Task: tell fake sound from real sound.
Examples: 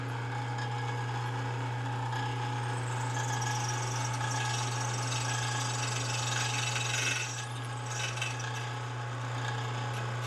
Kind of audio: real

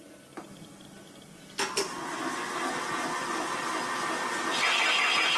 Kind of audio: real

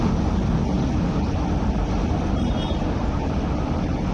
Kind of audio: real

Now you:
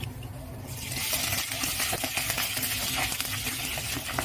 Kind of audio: real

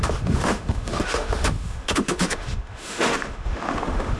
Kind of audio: fake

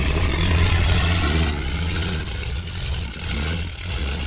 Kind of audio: fake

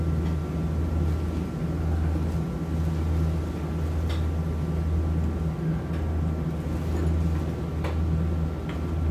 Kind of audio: real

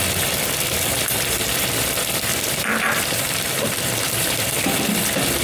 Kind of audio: fake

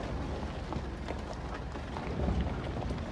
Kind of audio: real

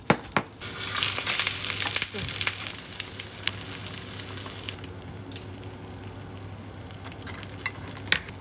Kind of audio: real